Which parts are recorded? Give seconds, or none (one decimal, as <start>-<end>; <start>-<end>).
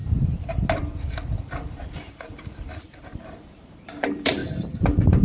0.0-1.4; 4.4-5.2